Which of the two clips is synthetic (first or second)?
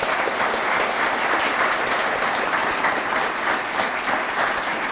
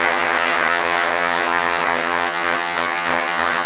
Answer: second